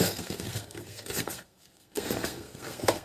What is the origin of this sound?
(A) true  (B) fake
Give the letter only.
B